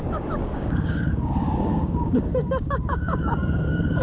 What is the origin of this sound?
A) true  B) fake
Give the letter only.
B